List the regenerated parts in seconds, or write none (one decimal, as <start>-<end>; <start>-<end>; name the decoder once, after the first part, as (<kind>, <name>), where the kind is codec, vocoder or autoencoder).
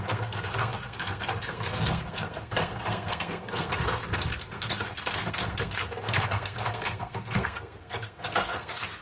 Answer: 0.0-9.0 (codec, SNAC)